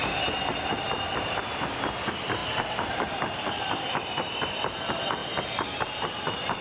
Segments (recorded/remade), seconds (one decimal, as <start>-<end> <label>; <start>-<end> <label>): 0.0-6.6 remade